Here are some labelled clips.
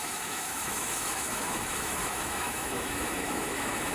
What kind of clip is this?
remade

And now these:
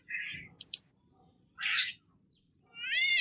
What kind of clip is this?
remade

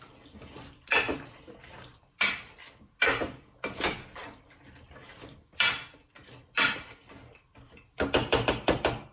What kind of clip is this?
recorded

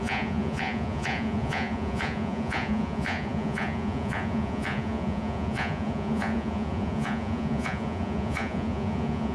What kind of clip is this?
remade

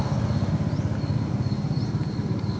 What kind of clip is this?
recorded